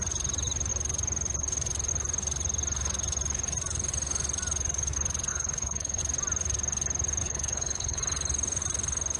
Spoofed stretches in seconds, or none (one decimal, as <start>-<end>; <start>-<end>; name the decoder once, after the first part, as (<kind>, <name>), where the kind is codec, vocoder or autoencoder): 5.3-6.0 (codec, HILCodec); 7.2-8.0